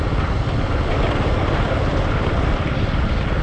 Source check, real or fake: real